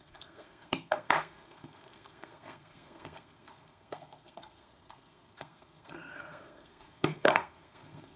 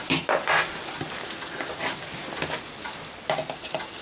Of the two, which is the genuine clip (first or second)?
second